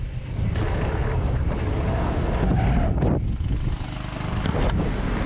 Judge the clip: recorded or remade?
recorded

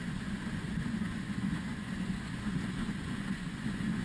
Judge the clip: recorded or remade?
remade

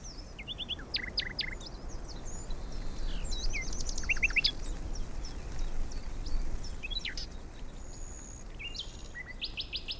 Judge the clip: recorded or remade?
recorded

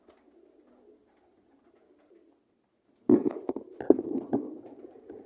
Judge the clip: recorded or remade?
recorded